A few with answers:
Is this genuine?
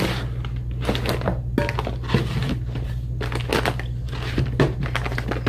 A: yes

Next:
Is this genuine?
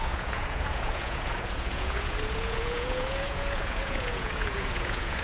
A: no